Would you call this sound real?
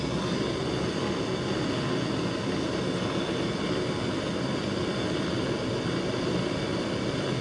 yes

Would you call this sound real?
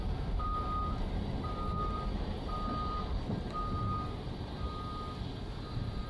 yes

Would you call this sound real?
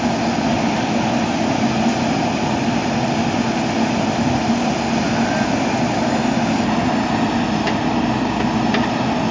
yes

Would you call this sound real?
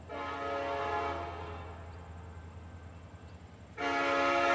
yes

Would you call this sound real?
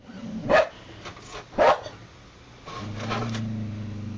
yes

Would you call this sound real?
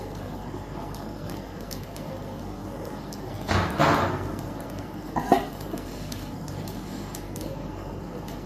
no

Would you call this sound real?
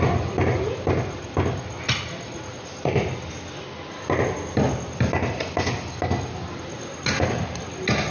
yes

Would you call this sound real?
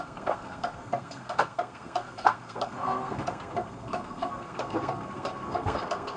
no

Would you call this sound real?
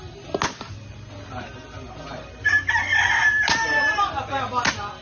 yes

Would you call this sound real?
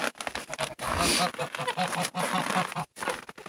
yes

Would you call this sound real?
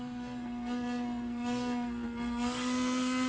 no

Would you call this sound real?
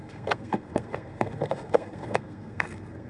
no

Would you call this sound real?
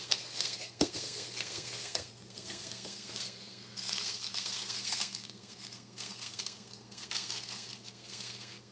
no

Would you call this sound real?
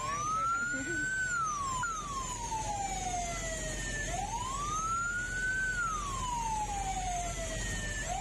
yes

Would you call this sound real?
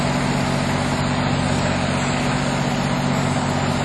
yes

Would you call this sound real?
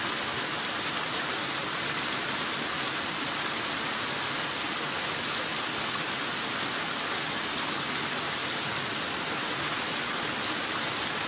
yes